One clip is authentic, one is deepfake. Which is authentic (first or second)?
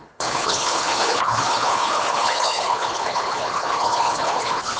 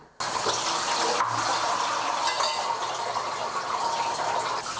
second